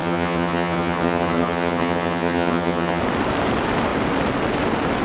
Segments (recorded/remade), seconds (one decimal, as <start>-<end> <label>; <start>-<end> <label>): 0.0-3.0 remade; 3.0-5.0 recorded